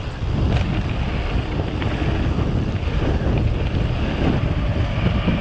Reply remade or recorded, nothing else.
recorded